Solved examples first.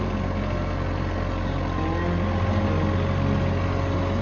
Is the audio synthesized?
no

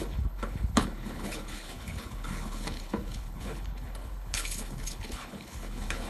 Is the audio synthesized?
yes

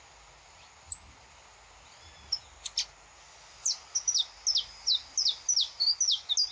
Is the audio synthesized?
no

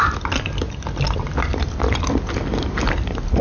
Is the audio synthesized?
no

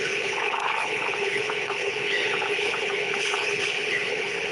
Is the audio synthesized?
yes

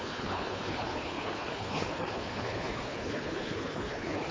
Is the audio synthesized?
yes